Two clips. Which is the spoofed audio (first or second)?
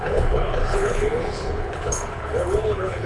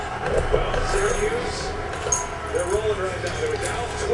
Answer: first